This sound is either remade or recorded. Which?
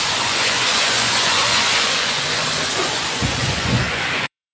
remade